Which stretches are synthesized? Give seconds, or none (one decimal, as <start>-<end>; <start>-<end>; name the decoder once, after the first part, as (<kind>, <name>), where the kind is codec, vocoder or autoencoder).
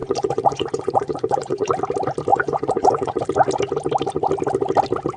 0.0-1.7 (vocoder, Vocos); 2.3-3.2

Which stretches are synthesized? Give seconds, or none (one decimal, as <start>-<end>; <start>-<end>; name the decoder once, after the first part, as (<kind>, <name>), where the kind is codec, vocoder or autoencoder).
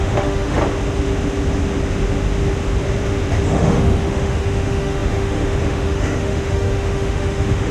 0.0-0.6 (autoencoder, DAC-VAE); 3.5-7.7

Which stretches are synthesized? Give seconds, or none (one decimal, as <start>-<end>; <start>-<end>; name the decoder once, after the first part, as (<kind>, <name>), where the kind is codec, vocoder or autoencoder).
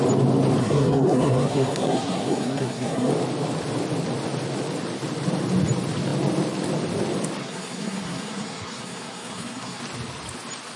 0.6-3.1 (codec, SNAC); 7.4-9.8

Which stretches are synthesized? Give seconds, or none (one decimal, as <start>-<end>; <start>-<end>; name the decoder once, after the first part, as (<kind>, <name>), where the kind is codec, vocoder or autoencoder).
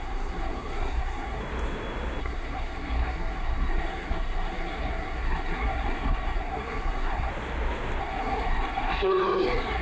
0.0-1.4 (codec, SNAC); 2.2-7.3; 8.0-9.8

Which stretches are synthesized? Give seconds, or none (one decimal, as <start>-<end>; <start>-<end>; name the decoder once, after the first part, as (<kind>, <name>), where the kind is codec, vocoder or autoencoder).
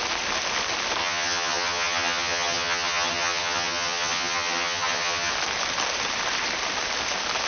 1.0-5.3 (vocoder, HiFi-GAN)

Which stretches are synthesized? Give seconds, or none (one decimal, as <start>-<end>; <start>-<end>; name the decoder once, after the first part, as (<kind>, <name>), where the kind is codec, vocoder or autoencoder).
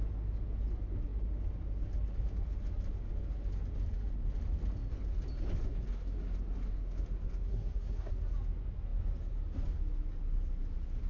7.5-8.1 (codec, SNAC)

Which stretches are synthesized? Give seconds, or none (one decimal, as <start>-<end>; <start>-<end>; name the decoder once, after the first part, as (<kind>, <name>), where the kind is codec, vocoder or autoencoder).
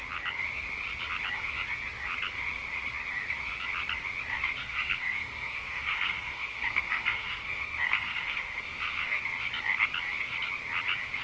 4.6-9.2 (codec, SNAC)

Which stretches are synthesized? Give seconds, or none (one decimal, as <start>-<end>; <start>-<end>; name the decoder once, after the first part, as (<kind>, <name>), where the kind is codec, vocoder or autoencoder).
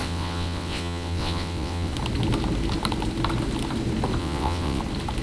0.0-1.9 (vocoder, WaveNeXt); 4.2-4.8